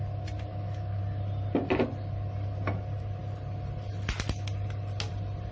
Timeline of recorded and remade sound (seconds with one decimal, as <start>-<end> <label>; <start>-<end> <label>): 0.0-0.5 recorded; 0.5-1.0 remade; 1.0-5.5 recorded